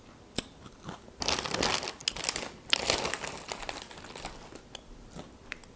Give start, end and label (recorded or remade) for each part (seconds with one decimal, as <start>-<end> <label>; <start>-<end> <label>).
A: 0.0-5.8 recorded